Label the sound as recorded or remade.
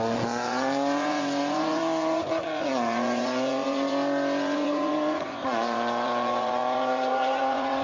remade